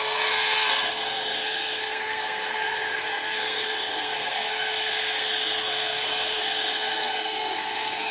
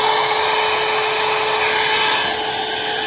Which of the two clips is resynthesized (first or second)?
first